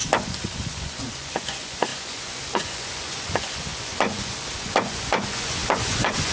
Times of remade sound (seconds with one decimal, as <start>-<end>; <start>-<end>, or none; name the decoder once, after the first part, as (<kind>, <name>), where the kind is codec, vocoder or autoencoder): 0.0-6.3 (vocoder, Vocos)